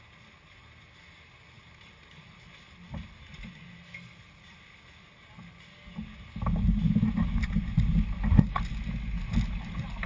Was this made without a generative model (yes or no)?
yes